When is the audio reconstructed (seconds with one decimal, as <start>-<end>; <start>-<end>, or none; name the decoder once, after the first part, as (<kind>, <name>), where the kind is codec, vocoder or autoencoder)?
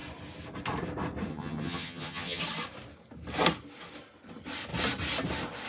1.3-2.4 (vocoder, HiFi-GAN)